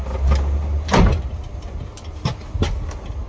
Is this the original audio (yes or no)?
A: yes